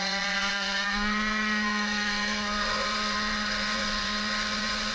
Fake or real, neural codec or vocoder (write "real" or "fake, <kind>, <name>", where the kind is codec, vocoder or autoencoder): fake, vocoder, Vocos